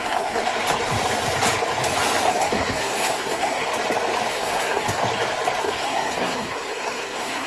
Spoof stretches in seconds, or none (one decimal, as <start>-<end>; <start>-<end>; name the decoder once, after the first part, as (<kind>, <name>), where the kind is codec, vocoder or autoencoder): 0.0-0.4 (codec, SNAC); 2.3-3.7; 4.3-5.0; 5.6-7.5